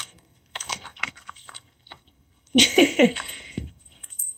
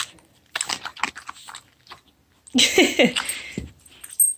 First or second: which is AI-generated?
first